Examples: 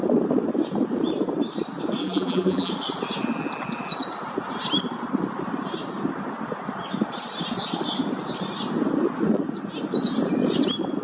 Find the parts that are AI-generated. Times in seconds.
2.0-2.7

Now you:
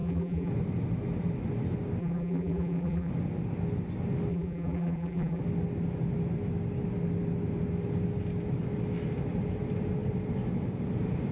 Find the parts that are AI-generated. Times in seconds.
0.0-0.5; 2.0-3.1; 4.3-5.4